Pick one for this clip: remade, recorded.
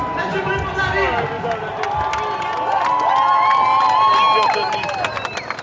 recorded